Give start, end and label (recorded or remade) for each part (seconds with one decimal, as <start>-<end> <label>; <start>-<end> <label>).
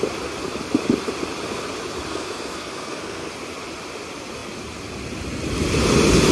0.0-2.1 recorded; 2.1-3.3 remade; 3.3-6.3 recorded